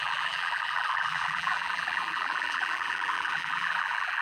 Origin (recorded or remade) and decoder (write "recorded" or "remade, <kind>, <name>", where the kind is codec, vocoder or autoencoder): remade, vocoder, BigVGAN v2